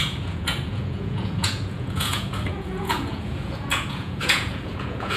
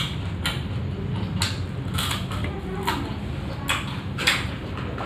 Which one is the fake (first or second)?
first